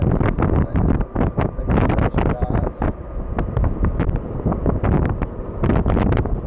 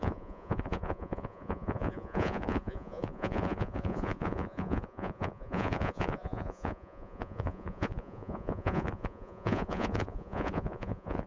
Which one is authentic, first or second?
first